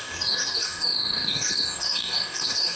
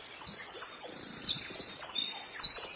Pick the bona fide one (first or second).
second